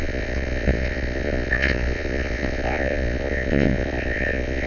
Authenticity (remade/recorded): remade